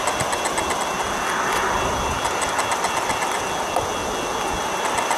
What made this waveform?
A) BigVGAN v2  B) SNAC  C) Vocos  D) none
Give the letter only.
D